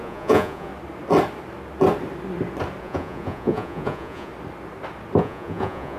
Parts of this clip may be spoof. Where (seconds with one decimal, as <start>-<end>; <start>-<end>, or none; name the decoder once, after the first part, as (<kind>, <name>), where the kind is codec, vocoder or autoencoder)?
0.0-0.7 (vocoder, Vocos); 2.8-4.3; 5.2-6.0

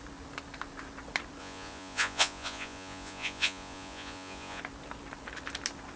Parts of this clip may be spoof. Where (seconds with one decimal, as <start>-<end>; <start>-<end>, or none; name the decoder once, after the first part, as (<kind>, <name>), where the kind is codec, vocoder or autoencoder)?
1.4-4.6 (vocoder, Vocos)

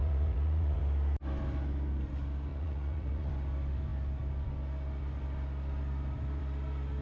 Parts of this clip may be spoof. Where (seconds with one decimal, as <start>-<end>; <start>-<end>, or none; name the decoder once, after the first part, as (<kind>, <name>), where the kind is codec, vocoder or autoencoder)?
0.0-0.8 (vocoder, Vocos); 2.5-3.3

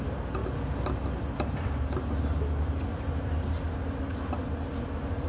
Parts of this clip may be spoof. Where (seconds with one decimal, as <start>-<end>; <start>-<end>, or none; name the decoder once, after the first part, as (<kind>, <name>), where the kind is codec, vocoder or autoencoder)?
none

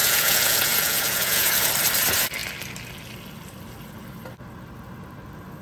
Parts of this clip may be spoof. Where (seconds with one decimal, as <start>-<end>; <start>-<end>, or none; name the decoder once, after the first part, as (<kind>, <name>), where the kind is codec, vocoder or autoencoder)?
0.0-1.7 (vocoder, Vocos)